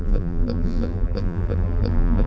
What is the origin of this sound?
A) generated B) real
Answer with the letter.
A